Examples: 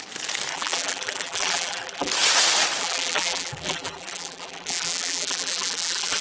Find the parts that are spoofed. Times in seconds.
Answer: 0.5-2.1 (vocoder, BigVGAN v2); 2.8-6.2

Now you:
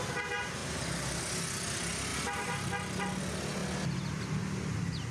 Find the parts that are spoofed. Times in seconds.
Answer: none

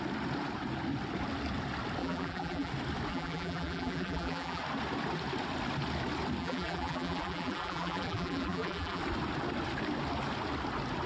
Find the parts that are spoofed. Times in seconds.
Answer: 2.0-2.7 (vocoder, BigVGAN v2); 3.1-4.6; 6.4-9.0

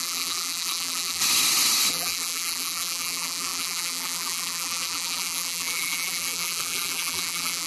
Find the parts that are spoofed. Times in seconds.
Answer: 0.0-1.2 (vocoder, BigVGAN v2); 1.9-7.7

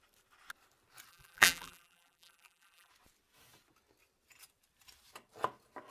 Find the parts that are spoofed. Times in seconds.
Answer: 1.1-2.9 (vocoder, BigVGAN v2)